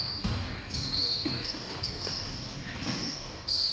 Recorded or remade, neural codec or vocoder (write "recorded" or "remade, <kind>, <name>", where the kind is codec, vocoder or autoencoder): remade, codec, DAC